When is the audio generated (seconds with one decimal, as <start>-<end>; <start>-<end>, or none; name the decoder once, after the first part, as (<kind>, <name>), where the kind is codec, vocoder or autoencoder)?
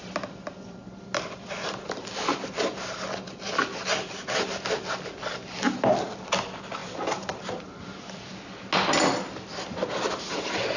6.8-7.8 (vocoder, BigVGAN v2)